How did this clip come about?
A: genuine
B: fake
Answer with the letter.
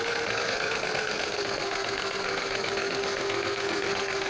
B